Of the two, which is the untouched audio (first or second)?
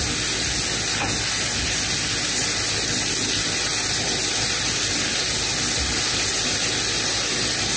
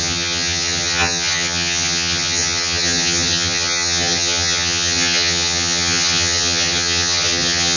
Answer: first